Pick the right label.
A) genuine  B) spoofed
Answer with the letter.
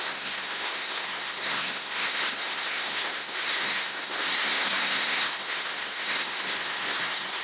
B